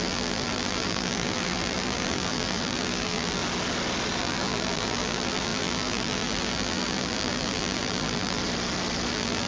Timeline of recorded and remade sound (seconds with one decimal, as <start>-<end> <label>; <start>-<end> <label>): 0.0-3.4 remade; 3.4-4.2 recorded; 4.2-8.4 remade; 8.4-9.1 recorded; 9.1-9.5 remade